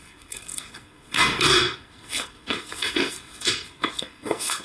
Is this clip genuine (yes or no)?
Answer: no